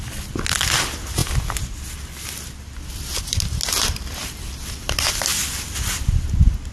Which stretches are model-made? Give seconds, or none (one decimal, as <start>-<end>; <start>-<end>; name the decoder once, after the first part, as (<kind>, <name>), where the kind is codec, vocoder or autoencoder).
none